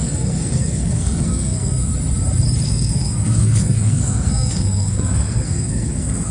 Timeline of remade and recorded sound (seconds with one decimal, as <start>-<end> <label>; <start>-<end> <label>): 0.0-1.9 remade; 1.9-2.7 recorded; 2.7-6.3 remade